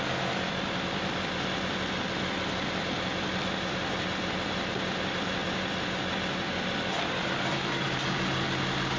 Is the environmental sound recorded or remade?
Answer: recorded